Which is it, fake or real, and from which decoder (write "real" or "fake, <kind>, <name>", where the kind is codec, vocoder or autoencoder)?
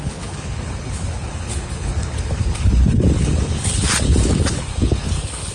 fake, codec, HILCodec